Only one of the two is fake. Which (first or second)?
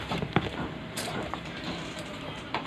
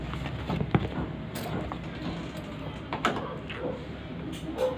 first